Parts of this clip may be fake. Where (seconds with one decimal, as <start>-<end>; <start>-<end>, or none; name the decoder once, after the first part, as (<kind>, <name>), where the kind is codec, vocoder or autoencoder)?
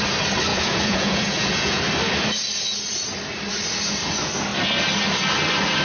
0.5-1.8 (vocoder, Vocos)